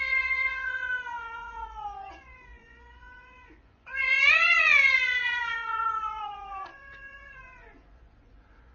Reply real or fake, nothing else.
fake